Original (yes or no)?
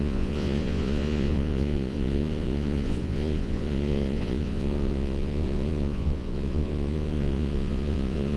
no